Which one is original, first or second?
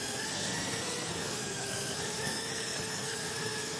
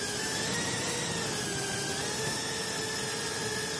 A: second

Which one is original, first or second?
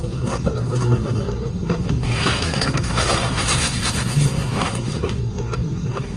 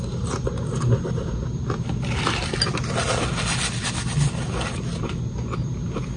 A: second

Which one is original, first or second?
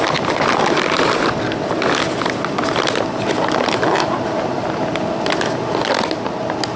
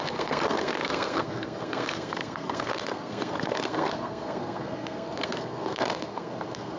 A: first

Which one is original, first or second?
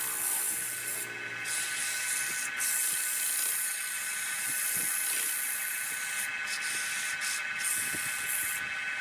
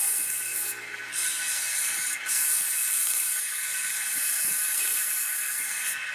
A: first